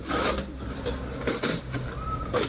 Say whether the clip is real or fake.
real